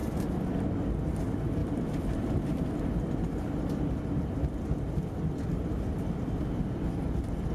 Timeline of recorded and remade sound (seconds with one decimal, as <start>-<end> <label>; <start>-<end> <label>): 0.0-7.5 recorded

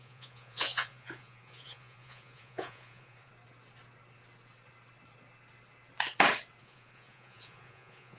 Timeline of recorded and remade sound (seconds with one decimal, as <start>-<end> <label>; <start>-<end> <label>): 0.0-3.3 remade; 3.3-6.6 recorded; 6.6-8.2 remade

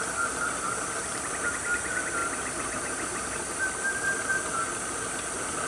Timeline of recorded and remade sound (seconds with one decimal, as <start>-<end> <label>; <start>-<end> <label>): 0.0-2.2 recorded; 2.2-4.0 remade; 4.0-5.7 recorded

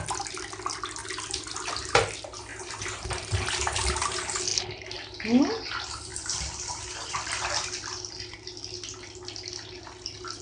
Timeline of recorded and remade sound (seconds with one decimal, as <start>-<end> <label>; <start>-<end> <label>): 0.0-2.5 recorded; 2.5-3.1 remade; 3.1-6.1 recorded; 6.1-9.8 remade; 9.8-10.4 recorded

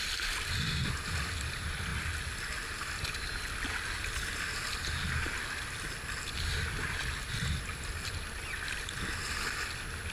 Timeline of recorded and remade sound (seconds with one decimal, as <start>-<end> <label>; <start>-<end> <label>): 0.0-10.1 recorded

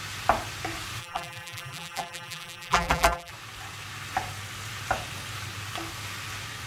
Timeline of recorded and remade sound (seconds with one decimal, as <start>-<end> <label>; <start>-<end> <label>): 0.0-1.0 recorded; 1.0-3.3 remade; 3.3-6.7 recorded

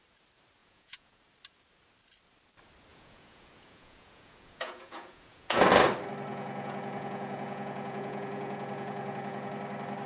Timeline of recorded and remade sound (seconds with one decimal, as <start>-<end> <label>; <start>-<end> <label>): 0.0-0.6 recorded; 0.6-1.2 remade; 1.2-2.9 recorded; 2.9-5.6 remade; 5.6-6.3 recorded; 6.3-9.5 remade; 9.5-10.1 recorded